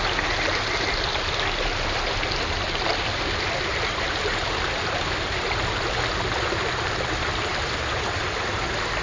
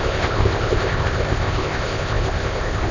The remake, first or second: second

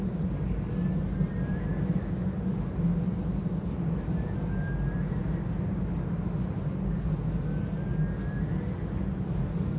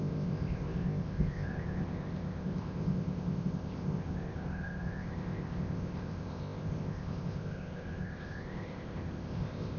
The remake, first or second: second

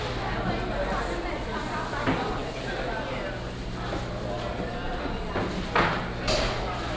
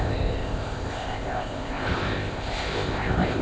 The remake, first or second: second